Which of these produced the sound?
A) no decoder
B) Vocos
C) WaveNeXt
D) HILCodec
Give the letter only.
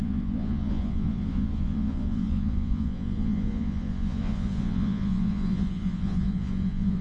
B